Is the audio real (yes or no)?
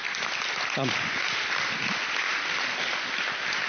yes